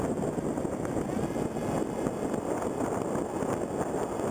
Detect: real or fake real